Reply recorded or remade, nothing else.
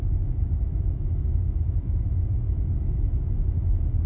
remade